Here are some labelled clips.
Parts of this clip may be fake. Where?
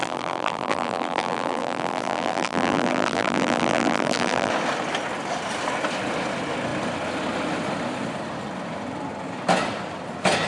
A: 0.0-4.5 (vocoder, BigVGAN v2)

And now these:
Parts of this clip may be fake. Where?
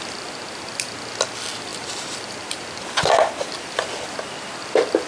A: 1.7-2.8 (vocoder, BigVGAN v2)